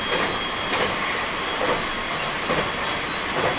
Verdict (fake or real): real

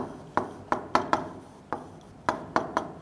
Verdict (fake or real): real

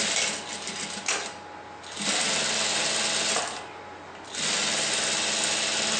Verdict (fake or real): real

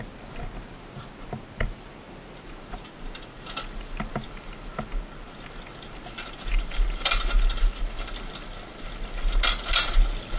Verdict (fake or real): real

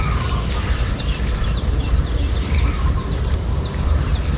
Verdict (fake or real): real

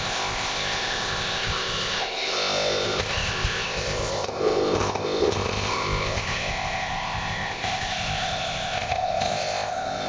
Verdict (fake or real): fake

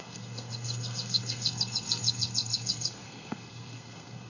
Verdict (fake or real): fake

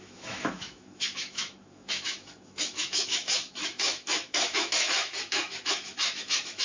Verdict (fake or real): fake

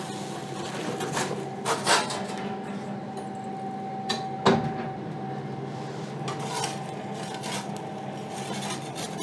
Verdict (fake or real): real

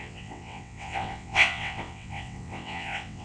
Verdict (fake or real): fake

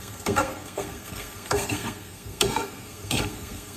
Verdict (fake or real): fake